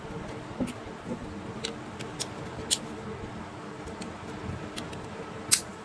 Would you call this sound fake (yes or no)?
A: no